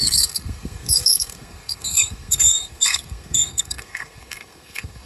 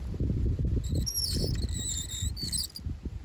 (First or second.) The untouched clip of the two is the second